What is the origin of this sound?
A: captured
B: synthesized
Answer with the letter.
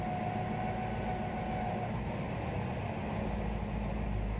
A